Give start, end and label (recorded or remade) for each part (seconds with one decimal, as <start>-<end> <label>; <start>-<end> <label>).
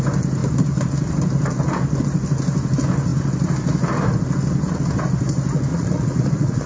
0.0-5.7 recorded; 5.7-6.7 remade